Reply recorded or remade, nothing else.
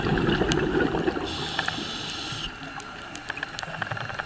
recorded